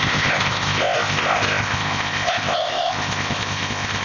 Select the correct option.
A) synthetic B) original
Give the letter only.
A